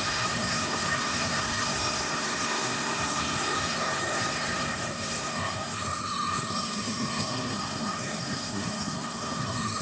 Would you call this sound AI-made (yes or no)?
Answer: yes